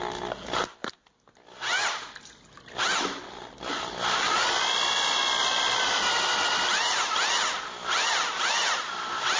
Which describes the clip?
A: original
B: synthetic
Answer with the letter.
A